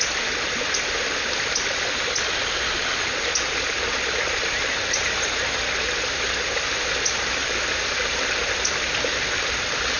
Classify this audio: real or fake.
real